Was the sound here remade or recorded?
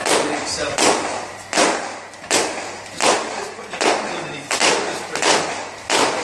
recorded